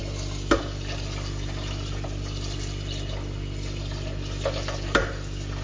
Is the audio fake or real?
real